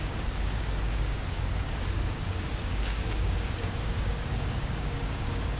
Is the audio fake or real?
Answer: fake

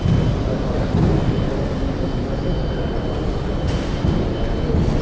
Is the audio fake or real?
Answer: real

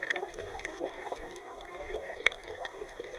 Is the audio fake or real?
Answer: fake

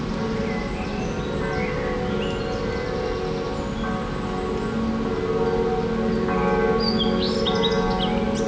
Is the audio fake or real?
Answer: real